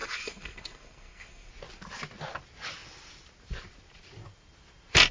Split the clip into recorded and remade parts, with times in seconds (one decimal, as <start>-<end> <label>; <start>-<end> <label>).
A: 0.0-1.5 remade; 1.5-5.1 recorded